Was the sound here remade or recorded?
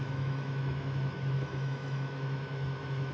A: remade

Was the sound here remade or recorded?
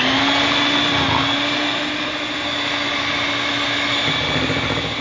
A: recorded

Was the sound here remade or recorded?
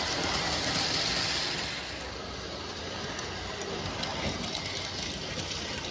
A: recorded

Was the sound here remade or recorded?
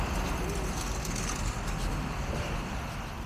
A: recorded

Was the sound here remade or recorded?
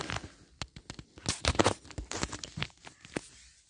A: recorded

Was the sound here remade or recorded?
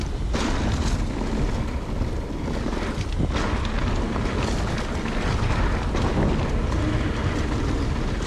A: recorded